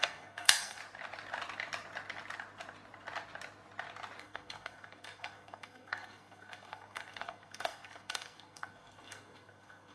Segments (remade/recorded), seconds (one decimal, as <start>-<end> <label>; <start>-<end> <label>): 0.0-0.8 remade; 0.8-4.2 recorded; 4.2-9.9 remade